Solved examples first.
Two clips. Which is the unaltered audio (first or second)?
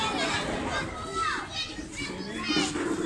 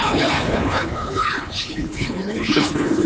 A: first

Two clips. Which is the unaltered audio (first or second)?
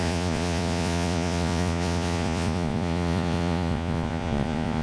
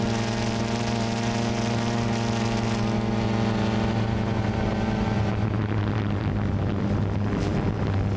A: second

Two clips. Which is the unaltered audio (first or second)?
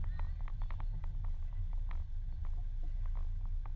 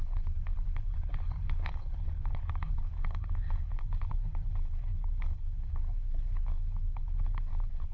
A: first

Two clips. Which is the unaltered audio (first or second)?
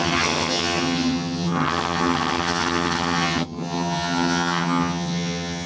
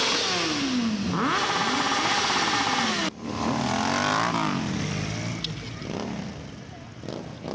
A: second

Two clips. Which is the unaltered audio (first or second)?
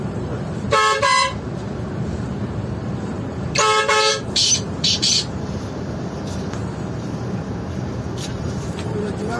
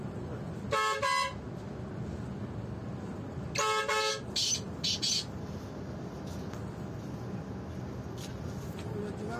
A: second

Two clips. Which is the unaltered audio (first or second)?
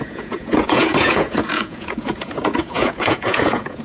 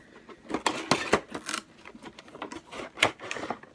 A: second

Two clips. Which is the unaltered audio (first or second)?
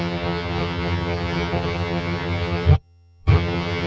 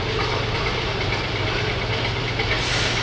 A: second